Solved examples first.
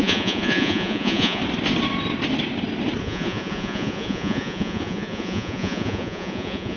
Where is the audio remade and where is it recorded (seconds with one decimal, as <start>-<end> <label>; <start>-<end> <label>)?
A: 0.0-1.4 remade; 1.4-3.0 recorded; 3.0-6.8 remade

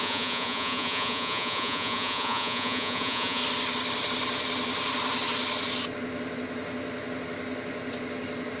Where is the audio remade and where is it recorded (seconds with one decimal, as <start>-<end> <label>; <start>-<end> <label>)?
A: 0.0-3.4 remade; 3.4-8.6 recorded

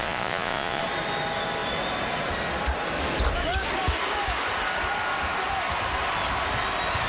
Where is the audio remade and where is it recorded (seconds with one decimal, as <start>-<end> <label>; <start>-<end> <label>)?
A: 0.0-0.8 remade; 0.8-7.1 recorded

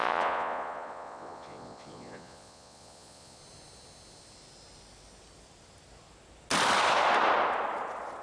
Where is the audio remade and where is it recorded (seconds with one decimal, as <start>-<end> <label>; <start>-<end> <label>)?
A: 0.0-3.4 remade; 3.4-8.2 recorded

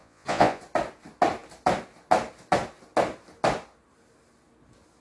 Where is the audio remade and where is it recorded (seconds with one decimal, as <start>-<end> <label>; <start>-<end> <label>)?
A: 0.0-0.6 remade; 0.6-5.0 recorded

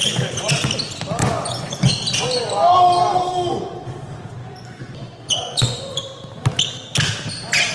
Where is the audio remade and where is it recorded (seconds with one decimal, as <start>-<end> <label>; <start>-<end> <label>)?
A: 0.0-0.7 remade; 0.7-1.2 recorded; 1.2-1.9 remade; 1.9-4.4 recorded; 4.4-6.0 remade; 6.0-7.7 recorded